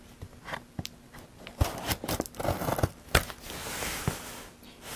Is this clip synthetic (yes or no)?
no